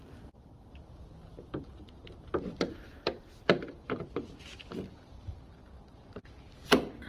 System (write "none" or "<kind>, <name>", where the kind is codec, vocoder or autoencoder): none